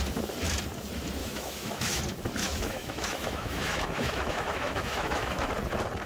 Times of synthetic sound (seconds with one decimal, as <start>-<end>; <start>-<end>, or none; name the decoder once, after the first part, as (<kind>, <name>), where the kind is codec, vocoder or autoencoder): 1.2-2.0 (autoencoder, DAC-VAE); 2.4-5.5

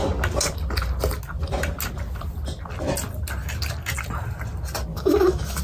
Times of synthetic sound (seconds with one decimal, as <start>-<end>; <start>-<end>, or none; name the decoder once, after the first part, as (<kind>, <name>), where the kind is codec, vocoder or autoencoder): 4.9-5.6 (autoencoder, DAC-VAE)